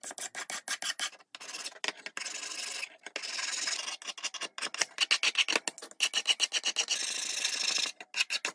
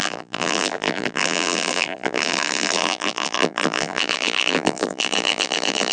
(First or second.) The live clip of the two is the first